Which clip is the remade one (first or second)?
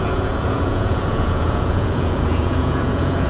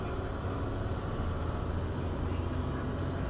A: first